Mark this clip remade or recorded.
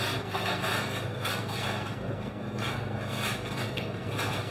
remade